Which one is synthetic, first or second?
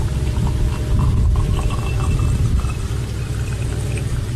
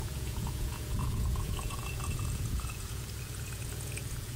second